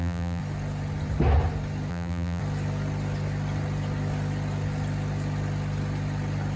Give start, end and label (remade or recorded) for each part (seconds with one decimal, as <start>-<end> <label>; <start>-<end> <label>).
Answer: 0.0-0.4 remade; 0.4-1.9 recorded; 1.9-2.4 remade; 2.4-6.6 recorded